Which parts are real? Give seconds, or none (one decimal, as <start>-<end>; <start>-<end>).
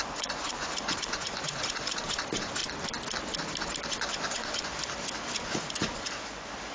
2.6-3.9; 4.7-5.3